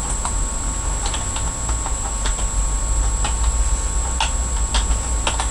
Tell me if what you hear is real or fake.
real